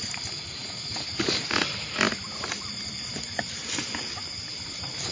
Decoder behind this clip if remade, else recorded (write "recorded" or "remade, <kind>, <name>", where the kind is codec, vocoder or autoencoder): recorded